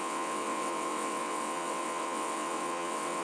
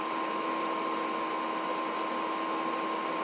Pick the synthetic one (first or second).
first